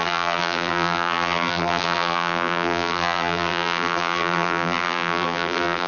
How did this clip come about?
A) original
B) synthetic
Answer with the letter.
B